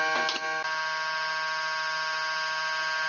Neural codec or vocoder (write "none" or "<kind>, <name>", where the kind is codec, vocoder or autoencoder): none